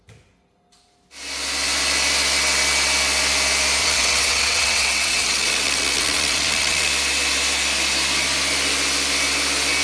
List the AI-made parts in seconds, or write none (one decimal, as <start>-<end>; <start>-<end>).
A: 3.8-6.9